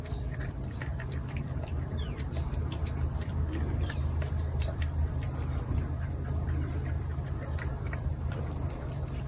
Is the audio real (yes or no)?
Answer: no